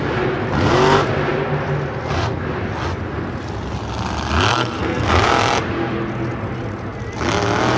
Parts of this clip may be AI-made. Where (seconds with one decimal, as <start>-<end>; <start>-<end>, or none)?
4.5-5.3